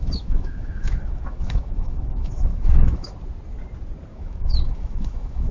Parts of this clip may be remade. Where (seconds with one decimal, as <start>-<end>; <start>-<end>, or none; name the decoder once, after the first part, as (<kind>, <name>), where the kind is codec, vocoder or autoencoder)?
0.0-3.1 (autoencoder, DAC-VAE); 4.1-5.5